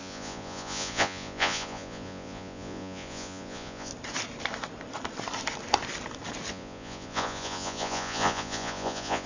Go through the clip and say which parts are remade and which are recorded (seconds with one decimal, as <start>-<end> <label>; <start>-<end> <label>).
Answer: 0.0-3.9 remade; 3.9-6.5 recorded; 6.5-9.3 remade